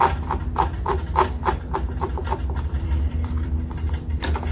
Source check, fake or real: fake